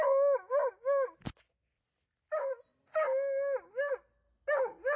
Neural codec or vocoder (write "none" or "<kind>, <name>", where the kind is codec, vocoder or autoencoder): none